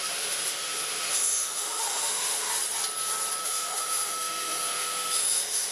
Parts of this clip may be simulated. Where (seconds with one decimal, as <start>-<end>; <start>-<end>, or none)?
0.0-2.5; 3.4-5.7

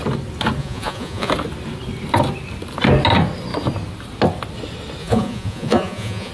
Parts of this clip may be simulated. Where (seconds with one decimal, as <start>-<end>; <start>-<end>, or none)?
0.6-1.3; 5.0-6.3

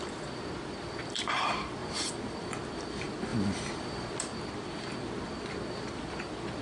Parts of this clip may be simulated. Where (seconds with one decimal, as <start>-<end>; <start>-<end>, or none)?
0.0-6.6

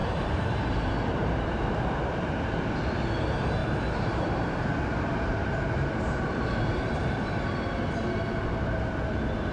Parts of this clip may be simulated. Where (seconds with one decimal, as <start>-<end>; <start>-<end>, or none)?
0.0-2.4; 3.6-7.3

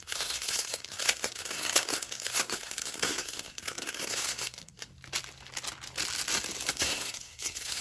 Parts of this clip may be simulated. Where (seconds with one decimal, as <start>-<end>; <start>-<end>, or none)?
0.0-4.9; 6.7-7.8

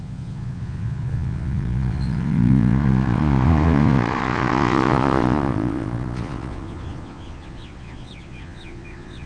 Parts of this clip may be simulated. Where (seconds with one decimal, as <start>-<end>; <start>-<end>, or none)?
0.0-9.3